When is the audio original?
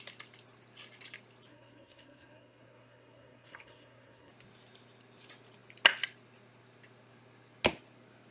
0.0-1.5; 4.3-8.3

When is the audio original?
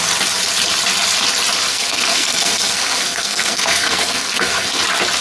0.0-1.7; 4.8-5.2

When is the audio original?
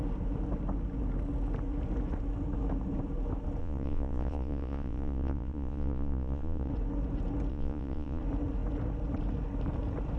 0.0-3.6; 6.7-7.5; 8.2-10.2